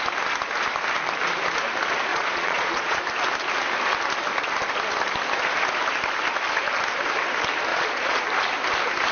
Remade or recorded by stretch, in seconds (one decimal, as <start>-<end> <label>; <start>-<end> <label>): 0.0-2.1 recorded; 2.1-3.0 remade; 3.0-7.7 recorded; 7.7-8.2 remade; 8.2-9.1 recorded

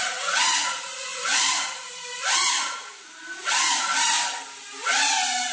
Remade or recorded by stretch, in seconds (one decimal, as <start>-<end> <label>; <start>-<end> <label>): 0.0-0.8 remade; 0.8-5.5 recorded

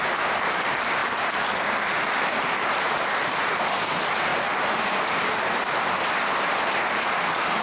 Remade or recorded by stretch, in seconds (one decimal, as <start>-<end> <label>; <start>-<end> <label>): 0.0-1.0 recorded; 1.0-2.8 remade; 2.8-4.3 recorded; 4.3-6.3 remade; 6.3-7.6 recorded

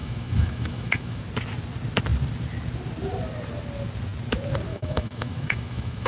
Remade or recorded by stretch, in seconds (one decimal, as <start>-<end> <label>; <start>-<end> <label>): 0.0-1.2 remade; 1.2-4.7 recorded; 4.7-6.1 remade

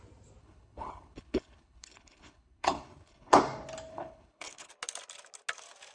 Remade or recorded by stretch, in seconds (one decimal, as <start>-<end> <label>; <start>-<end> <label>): 0.0-0.4 recorded; 0.4-3.4 remade; 3.4-3.9 recorded; 3.9-4.7 remade; 4.7-5.9 recorded